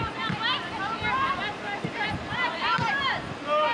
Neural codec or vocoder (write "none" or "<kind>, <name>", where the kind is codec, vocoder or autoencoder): none